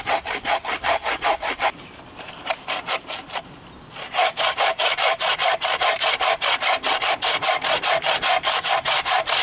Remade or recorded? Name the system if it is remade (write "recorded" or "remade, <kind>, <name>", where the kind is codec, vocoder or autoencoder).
recorded